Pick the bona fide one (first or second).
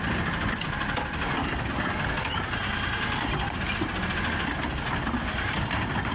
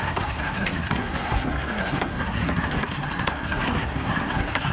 first